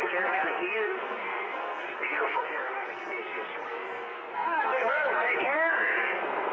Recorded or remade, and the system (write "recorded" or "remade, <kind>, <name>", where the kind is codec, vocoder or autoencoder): remade, codec, SNAC